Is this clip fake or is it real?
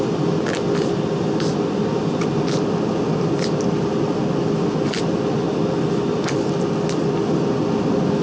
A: real